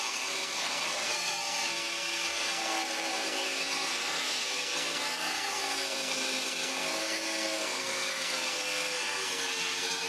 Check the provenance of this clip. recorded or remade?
remade